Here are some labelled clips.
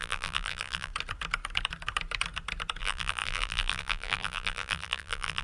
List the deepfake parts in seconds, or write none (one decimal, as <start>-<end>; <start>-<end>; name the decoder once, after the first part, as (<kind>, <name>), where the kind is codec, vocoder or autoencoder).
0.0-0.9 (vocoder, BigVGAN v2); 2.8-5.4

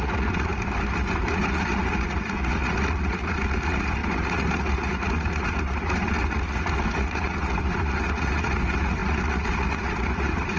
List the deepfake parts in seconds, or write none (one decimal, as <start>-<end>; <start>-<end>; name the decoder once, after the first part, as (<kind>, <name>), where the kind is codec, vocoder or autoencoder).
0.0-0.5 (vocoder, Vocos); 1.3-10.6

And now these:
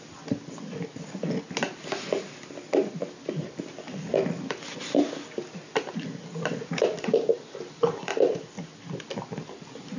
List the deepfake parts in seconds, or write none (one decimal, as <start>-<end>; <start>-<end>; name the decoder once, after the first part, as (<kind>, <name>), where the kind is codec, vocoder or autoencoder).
none

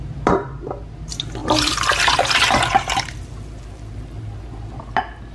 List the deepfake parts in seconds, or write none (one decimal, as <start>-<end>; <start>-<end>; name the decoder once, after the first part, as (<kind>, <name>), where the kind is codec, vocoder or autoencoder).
1.4-4.2 (vocoder, BigVGAN v2)